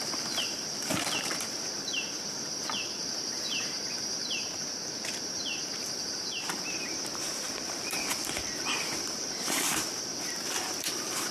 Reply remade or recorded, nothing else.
remade